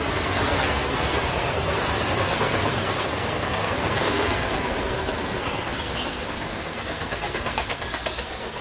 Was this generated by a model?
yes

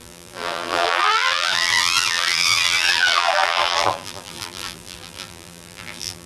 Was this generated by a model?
yes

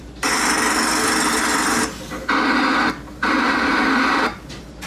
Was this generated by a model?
no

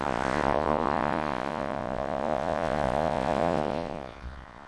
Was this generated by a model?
yes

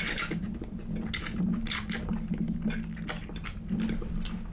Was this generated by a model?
no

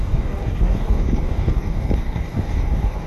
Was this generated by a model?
yes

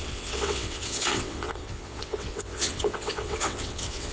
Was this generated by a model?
yes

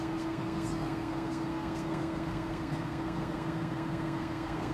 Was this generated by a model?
yes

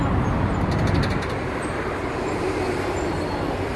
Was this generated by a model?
no